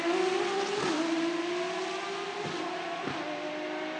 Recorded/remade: recorded